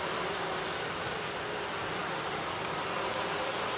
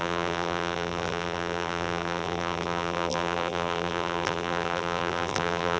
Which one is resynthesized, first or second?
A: second